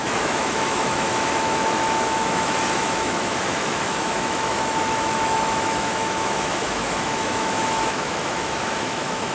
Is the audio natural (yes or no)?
no